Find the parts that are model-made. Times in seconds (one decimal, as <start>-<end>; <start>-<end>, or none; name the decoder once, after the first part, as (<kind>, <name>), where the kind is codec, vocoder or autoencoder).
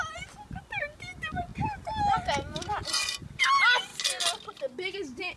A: none